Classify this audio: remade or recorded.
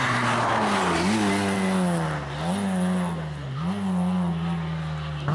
recorded